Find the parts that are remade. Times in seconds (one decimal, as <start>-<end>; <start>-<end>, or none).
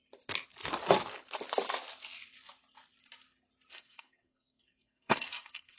3.7-5.8